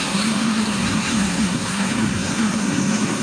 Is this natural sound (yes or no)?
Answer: no